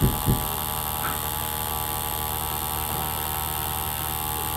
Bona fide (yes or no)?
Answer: yes